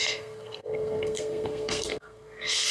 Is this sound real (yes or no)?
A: no